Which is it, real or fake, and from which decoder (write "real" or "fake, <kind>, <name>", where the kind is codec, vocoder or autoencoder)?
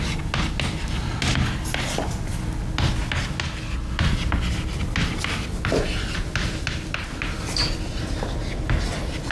real